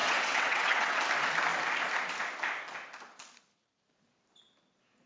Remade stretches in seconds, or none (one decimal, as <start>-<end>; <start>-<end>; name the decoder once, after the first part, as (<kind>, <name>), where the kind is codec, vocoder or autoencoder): 0.0-1.0 (vocoder, WaveNeXt)